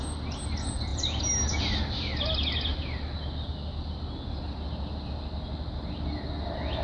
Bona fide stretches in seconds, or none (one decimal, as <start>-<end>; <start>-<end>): 0.0-6.8